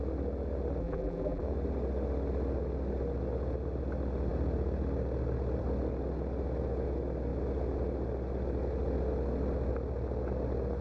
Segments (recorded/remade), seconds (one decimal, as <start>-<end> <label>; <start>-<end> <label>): 0.0-0.8 recorded; 0.8-1.4 remade; 1.4-10.8 recorded

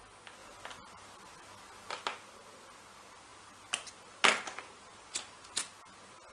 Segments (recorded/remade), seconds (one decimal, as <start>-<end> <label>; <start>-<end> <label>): 0.0-6.3 recorded

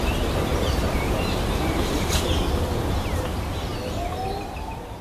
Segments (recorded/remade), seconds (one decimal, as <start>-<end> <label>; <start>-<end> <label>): 0.0-3.7 remade; 3.7-4.6 recorded; 4.6-5.0 remade

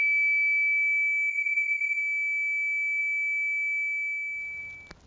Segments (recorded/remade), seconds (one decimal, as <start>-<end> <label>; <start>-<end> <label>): 0.0-1.3 recorded; 1.3-2.0 remade; 2.0-5.1 recorded

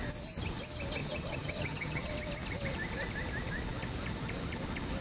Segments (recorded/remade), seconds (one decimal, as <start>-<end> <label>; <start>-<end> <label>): 0.0-1.0 recorded; 1.0-2.1 remade; 2.1-5.0 recorded

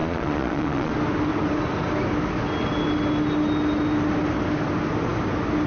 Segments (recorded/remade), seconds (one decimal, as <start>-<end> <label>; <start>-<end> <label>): 0.0-0.9 remade; 0.9-5.7 recorded